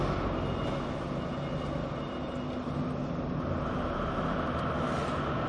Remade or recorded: recorded